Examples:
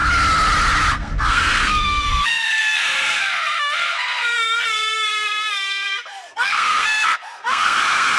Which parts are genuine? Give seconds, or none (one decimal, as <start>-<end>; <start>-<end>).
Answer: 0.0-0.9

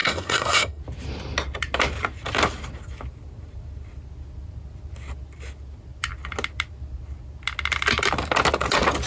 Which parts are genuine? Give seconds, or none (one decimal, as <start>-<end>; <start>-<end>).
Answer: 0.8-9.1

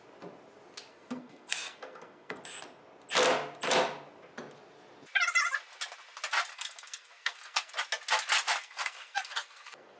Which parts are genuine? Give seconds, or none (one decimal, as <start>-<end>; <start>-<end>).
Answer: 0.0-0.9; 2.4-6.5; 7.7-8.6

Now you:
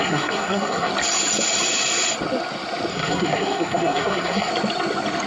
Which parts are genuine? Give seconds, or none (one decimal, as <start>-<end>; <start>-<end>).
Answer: 0.9-2.9; 4.5-5.3

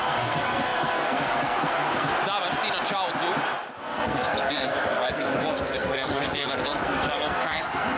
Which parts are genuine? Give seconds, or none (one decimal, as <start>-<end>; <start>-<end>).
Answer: 2.1-3.8

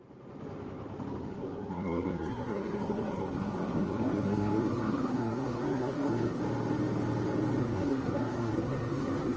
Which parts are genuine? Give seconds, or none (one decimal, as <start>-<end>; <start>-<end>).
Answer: 0.0-1.3; 6.4-7.6

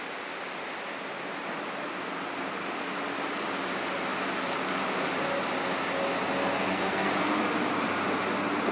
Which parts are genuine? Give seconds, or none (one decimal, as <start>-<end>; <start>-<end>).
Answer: 0.0-6.6; 7.1-8.7

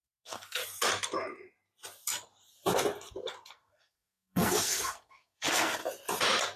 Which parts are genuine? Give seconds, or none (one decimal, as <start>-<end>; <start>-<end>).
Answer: 0.6-3.5; 5.8-6.6